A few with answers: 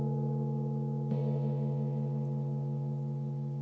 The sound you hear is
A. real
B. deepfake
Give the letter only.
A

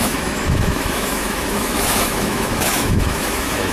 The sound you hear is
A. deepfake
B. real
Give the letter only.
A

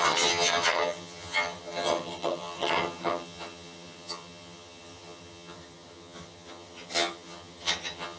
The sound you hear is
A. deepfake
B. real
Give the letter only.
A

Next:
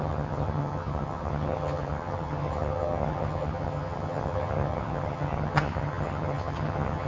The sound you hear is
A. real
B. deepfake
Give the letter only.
B